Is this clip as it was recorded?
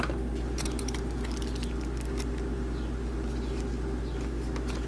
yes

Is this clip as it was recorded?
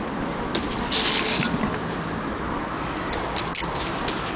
yes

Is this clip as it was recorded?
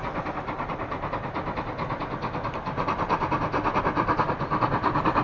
yes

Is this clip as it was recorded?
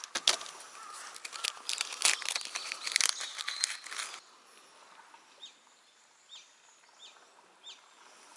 yes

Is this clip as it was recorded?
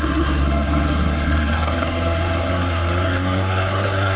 no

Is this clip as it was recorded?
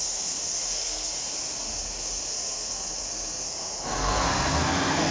no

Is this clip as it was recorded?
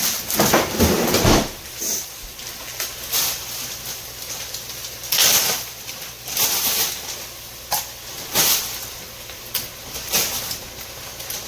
yes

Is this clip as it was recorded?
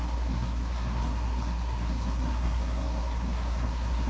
no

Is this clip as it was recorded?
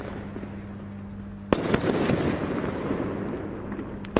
yes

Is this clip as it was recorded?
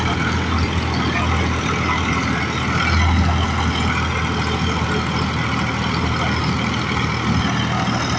yes